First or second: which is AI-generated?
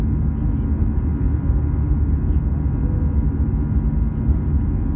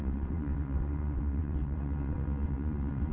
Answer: second